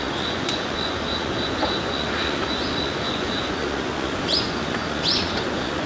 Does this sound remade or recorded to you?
remade